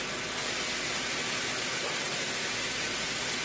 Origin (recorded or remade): recorded